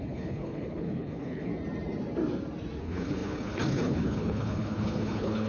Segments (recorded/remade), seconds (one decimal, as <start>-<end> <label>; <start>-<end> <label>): 0.0-1.5 remade; 1.5-2.8 recorded; 2.8-5.5 remade